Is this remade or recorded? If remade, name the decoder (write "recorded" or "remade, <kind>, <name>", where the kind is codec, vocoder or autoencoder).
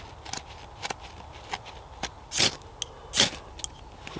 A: recorded